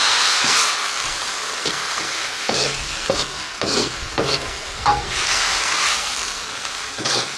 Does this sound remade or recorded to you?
remade